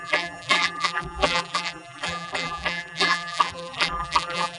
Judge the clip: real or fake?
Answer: fake